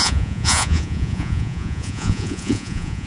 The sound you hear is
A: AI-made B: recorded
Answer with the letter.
A